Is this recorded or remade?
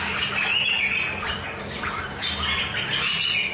recorded